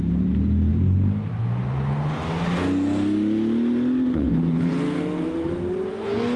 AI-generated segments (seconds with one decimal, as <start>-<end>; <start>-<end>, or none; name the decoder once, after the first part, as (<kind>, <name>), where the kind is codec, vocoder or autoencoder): 4.1-4.7 (codec, HILCodec)